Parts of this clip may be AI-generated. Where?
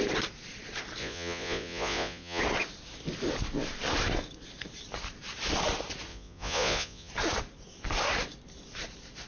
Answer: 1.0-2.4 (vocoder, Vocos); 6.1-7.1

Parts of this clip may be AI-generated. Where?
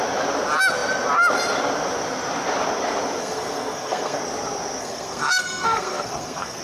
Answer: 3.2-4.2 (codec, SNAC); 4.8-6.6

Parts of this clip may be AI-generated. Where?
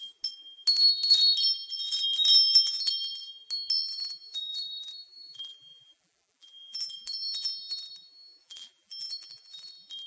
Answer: 2.3-2.9 (vocoder, BigVGAN v2); 3.9-7.9; 8.4-9.7